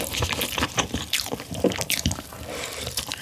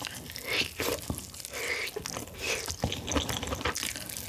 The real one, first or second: second